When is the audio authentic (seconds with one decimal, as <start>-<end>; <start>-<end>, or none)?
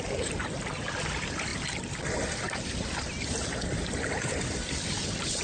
0.0-5.4